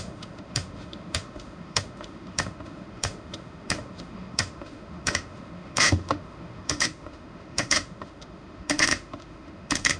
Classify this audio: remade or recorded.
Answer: remade